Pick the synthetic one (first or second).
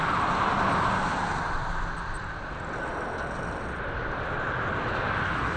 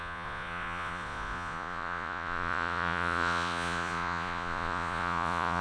second